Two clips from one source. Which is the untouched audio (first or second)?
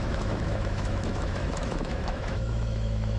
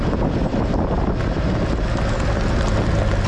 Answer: second